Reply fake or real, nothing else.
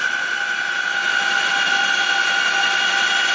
real